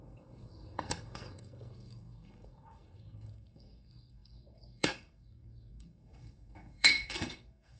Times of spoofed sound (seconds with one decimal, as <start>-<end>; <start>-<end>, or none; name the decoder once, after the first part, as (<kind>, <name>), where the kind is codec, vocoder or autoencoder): 0.0-7.8 (codec, SNAC)